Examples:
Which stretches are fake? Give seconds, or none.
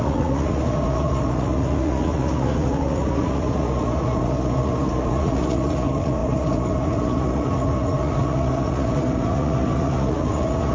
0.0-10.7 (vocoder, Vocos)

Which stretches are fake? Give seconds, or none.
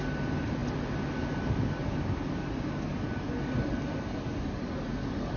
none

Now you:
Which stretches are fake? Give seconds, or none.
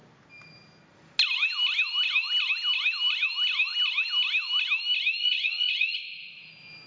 5.2-6.5 (vocoder, Vocos)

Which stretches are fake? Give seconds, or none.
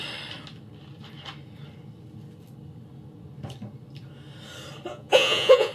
4.9-5.7 (vocoder, Vocos)